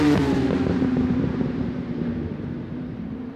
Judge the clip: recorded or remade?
remade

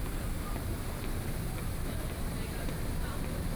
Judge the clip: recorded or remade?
recorded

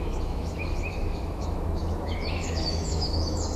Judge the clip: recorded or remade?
remade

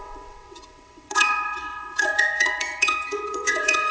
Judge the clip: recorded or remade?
remade